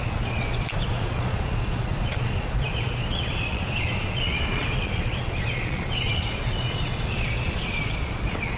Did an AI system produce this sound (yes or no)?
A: yes